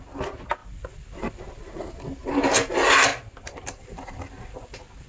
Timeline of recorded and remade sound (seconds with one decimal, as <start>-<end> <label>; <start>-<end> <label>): 0.0-0.6 recorded; 0.6-2.3 remade; 2.3-5.1 recorded